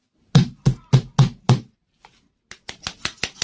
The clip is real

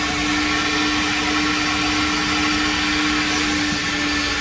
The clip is real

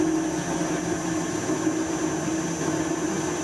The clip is real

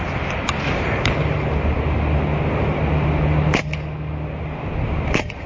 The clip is real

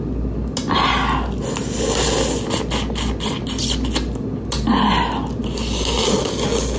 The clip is real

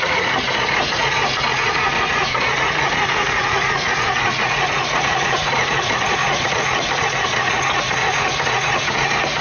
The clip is fake